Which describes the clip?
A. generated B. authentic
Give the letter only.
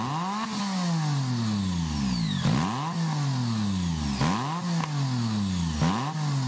B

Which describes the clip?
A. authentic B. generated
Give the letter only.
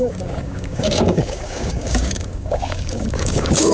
B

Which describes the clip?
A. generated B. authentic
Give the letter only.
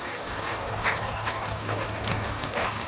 A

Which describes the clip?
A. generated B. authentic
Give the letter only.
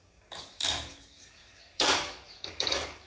A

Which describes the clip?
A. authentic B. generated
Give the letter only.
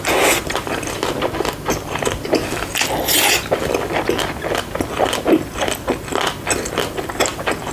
A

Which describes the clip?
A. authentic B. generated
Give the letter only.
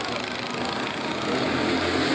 A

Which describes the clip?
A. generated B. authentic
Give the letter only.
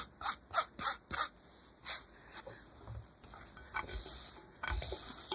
B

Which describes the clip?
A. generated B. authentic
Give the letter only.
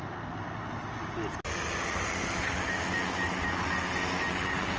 B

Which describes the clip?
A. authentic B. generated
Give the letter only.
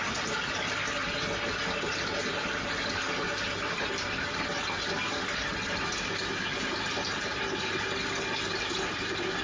A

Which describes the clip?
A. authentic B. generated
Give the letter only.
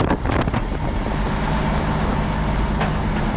A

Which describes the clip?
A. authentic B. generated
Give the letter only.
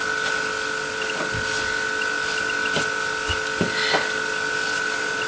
A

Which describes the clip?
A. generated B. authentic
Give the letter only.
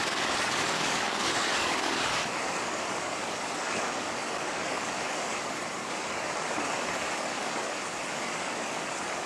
A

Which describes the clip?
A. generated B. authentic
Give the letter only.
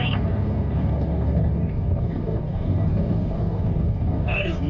A